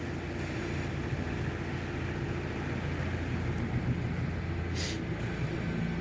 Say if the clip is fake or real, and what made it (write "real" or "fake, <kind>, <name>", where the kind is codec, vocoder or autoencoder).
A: real